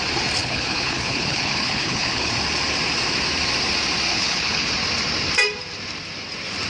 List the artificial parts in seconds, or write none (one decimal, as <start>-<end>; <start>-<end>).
0.4-2.3; 4.1-4.7